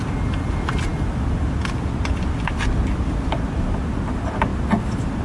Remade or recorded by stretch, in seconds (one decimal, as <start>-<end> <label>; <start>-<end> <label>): 0.0-5.2 recorded